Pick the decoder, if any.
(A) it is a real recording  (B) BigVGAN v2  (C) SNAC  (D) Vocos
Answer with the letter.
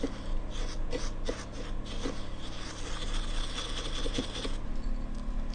A